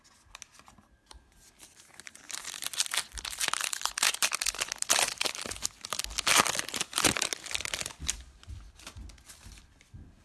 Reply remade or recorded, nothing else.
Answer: recorded